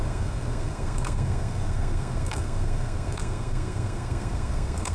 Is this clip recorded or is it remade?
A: remade